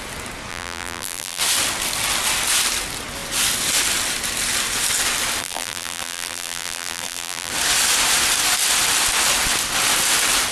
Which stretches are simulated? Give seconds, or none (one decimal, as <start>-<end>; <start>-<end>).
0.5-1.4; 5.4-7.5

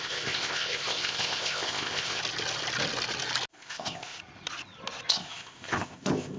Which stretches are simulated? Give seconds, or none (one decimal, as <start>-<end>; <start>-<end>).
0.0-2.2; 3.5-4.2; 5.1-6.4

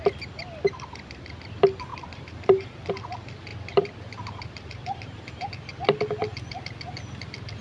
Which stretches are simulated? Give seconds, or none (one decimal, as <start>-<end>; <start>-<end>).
1.9-2.9; 3.5-5.5